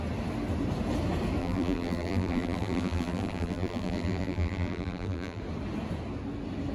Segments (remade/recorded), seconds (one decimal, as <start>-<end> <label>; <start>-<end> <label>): 0.0-1.4 recorded; 1.4-5.4 remade; 5.4-6.7 recorded